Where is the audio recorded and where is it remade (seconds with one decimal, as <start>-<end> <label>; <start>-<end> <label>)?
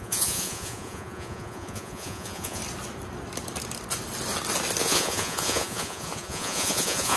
0.0-2.6 remade; 2.6-4.8 recorded; 4.8-7.2 remade